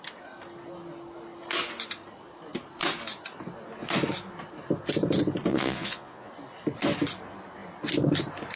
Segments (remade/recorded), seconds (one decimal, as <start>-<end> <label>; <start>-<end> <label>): 0.0-5.5 recorded; 5.5-6.3 remade; 6.3-8.6 recorded